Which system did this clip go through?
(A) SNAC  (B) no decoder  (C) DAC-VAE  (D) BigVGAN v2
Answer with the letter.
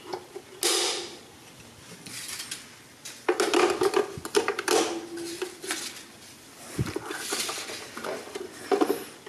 B